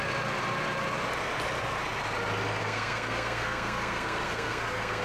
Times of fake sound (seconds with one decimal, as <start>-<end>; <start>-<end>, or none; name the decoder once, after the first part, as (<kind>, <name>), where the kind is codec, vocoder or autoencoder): 2.6-5.0 (codec, SNAC)